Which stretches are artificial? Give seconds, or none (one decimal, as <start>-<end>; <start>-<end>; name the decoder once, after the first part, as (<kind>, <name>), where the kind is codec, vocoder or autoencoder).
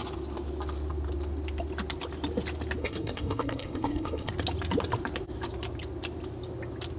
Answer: 2.8-4.3 (codec, SNAC)